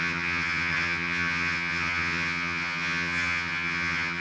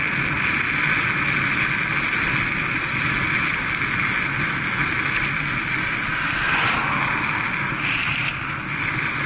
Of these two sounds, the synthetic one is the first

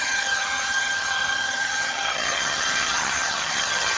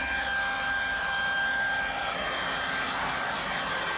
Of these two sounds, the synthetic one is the first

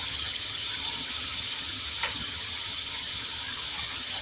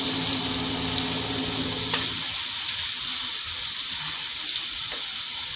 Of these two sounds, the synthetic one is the first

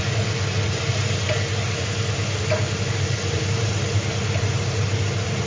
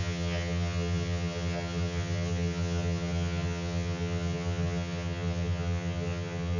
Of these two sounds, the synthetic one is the second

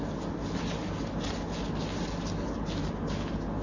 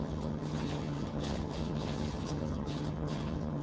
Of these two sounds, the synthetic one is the second